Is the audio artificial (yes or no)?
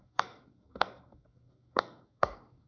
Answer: yes